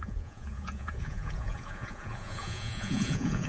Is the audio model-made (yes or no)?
yes